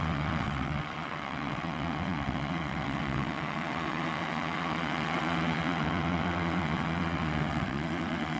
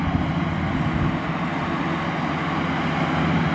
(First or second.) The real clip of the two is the second